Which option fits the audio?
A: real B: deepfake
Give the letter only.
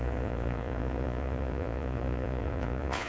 B